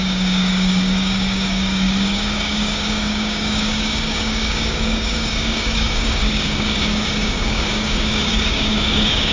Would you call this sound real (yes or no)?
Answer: no